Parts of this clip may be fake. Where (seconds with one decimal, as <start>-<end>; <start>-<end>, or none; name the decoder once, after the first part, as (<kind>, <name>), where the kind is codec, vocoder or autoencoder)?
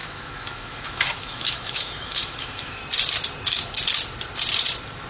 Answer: 0.0-2.8 (autoencoder, DAC-VAE)